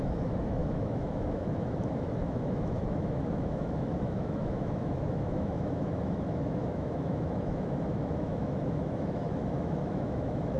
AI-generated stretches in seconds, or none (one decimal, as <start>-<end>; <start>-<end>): 0.0-10.6